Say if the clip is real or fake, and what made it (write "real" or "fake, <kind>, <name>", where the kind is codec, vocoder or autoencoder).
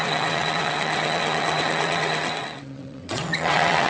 fake, vocoder, WaveNeXt